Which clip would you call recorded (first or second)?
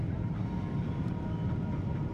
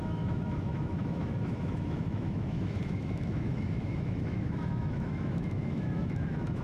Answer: first